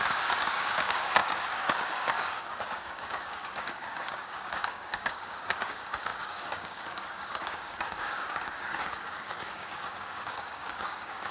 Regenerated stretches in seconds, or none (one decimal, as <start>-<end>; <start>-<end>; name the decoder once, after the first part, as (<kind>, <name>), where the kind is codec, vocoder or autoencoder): 0.0-11.3 (codec, DAC)